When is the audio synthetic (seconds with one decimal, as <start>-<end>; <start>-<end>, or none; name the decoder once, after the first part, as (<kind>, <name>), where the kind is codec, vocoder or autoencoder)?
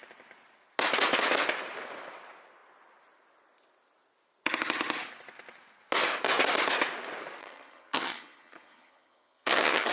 7.4-9.9 (vocoder, HiFi-GAN)